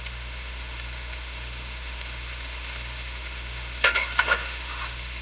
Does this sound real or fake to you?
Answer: fake